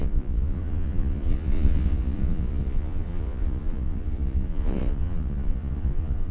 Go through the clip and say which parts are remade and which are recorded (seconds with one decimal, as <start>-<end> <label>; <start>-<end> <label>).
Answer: 0.0-6.3 remade